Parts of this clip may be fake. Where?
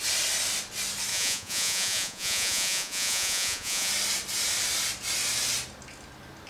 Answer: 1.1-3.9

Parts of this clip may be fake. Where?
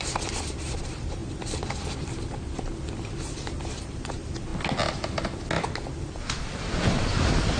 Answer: 0.0-1.2; 3.8-4.5; 6.0-7.6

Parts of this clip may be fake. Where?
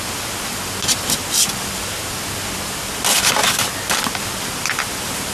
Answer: none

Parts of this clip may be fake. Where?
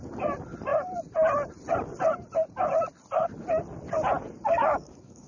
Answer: 4.6-5.3